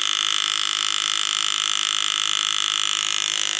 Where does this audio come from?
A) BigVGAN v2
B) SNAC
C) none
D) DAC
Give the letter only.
C